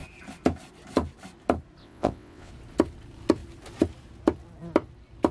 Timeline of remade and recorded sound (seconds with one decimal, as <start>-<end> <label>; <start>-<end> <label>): 0.0-1.8 recorded; 1.8-2.5 remade; 2.5-5.3 recorded